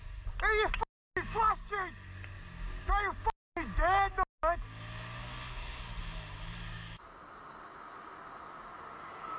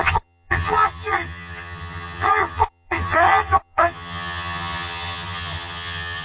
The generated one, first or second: second